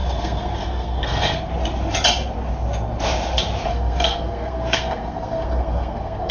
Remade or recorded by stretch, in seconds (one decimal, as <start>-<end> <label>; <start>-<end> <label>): 0.0-1.5 remade; 1.5-3.7 recorded; 3.7-6.3 remade